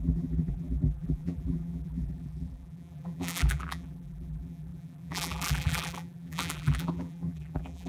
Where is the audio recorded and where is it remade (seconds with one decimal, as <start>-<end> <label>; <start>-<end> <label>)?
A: 0.0-7.9 remade